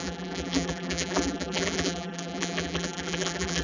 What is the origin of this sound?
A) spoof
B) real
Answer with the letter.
A